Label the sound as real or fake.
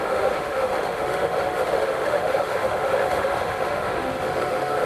fake